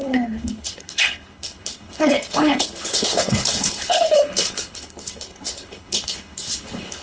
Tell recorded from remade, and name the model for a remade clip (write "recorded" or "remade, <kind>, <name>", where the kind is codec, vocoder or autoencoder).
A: remade, codec, HILCodec